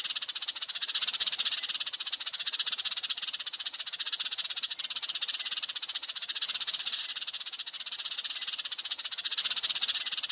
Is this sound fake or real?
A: real